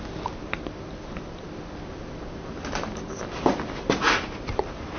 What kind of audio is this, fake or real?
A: real